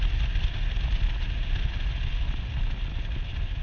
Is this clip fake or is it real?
real